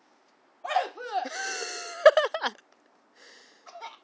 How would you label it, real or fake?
real